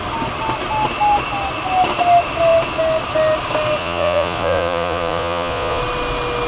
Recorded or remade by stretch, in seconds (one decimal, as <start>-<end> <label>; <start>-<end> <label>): 0.0-3.8 recorded; 3.8-5.8 remade; 5.8-6.5 recorded